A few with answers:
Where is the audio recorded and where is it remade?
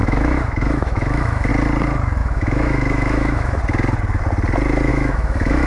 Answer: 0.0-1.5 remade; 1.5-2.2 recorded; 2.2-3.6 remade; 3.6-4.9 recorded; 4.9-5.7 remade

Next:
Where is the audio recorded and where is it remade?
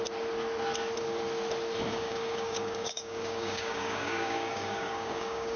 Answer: 0.0-1.9 recorded; 1.9-5.6 remade